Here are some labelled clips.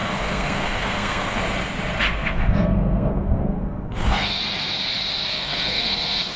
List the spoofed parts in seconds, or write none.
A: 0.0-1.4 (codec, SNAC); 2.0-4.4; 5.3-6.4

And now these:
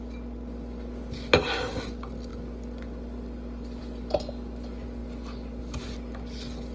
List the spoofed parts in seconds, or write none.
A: none